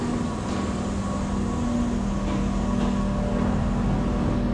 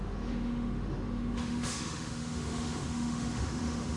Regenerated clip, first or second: second